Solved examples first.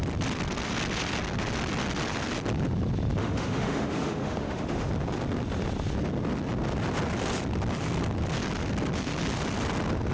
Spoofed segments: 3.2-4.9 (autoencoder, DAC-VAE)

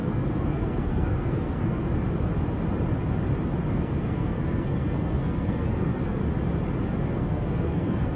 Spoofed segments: 0.0-1.8 (codec, SNAC); 3.7-6.2; 7.0-8.2

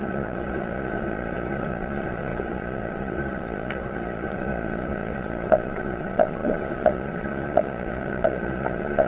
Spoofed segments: 0.0-9.1 (vocoder, Vocos)

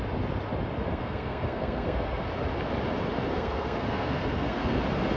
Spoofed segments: 0.9-2.3 (codec, SNAC); 3.3-4.8

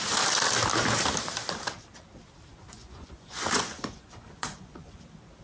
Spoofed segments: 2.5-5.0 (vocoder, Vocos)

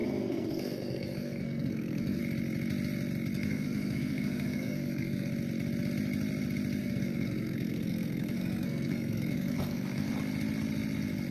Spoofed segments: 0.0-2.2 (codec, SNAC); 3.3-5.3; 6.8-10.1